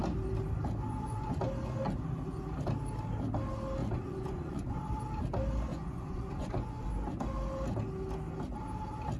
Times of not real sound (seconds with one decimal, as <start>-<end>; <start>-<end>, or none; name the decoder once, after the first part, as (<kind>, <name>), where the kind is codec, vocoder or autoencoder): 0.9-1.4 (vocoder, Vocos); 3.8-5.0; 5.7-6.9